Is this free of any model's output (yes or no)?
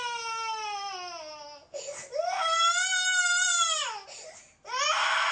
yes